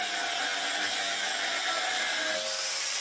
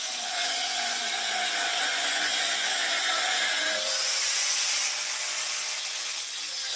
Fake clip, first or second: second